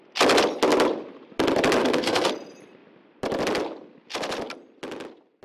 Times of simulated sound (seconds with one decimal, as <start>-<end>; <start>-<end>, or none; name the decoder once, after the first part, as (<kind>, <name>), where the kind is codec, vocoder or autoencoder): 1.8-2.3 (codec, SNAC)